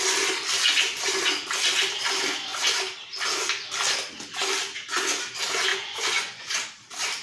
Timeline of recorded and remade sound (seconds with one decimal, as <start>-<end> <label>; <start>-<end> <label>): 0.0-5.7 recorded; 5.7-6.6 remade; 6.6-7.2 recorded